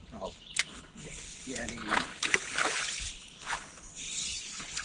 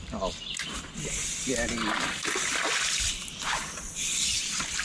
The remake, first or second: first